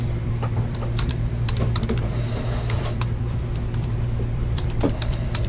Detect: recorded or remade remade